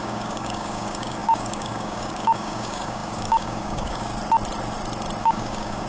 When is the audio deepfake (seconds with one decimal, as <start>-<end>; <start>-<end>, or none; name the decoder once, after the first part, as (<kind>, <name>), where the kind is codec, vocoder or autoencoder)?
0.0-4.1 (codec, DAC); 5.2-5.9